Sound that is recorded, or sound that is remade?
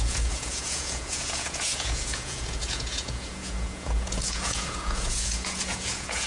remade